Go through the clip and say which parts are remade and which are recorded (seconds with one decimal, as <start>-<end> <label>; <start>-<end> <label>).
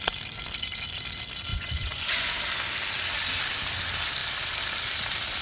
0.0-1.5 recorded; 1.5-2.3 remade; 2.3-5.4 recorded